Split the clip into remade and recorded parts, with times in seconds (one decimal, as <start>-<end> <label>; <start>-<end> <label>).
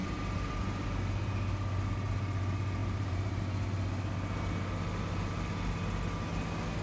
0.0-1.0 remade; 1.0-2.8 recorded; 2.8-3.4 remade; 3.4-6.8 recorded